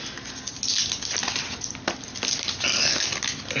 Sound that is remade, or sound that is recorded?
recorded